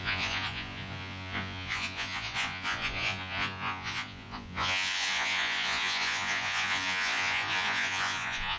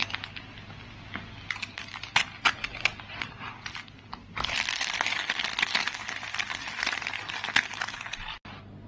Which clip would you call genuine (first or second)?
second